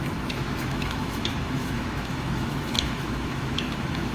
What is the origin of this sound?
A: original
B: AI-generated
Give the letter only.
B